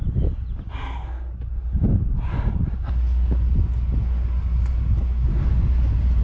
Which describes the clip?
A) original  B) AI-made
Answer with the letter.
A